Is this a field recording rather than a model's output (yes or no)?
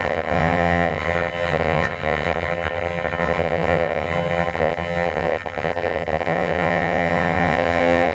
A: no